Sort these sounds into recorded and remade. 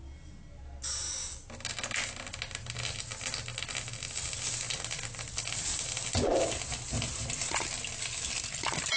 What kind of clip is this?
recorded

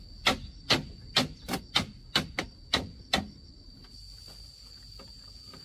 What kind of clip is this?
recorded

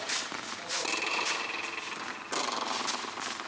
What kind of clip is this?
recorded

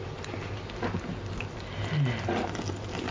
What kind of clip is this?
recorded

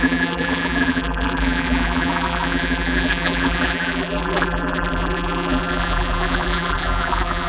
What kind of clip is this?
remade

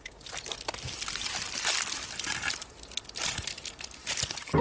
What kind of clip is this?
recorded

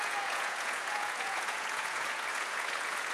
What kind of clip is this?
remade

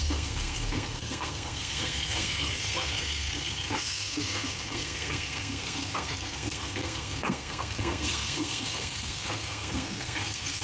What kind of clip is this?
remade